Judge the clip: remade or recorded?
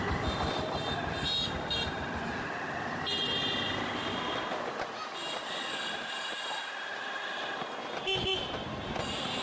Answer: recorded